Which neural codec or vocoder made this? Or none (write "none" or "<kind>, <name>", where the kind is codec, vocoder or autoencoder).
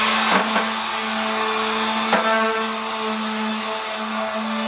none